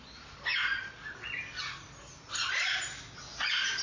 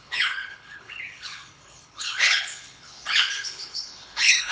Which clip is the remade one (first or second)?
second